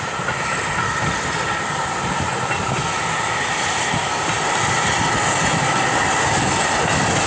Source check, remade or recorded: recorded